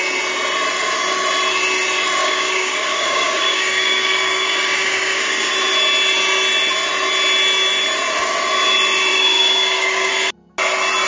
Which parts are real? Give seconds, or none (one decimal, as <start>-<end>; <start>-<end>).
0.0-2.2; 5.5-9.1; 10.1-11.1